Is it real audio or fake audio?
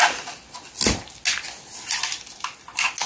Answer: real